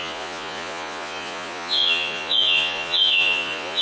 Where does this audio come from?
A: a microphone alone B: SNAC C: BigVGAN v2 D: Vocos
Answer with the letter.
D